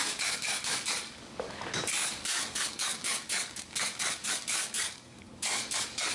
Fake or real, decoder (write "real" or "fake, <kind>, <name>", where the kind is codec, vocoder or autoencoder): fake, codec, DAC